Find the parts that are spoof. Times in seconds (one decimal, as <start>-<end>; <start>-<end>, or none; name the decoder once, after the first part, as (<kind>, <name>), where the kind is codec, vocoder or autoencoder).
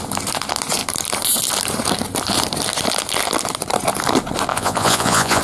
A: 4.5-5.4 (vocoder, Vocos)